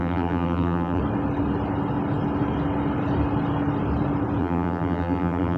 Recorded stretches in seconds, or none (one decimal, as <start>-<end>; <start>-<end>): 1.0-4.4